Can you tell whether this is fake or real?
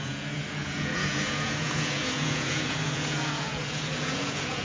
fake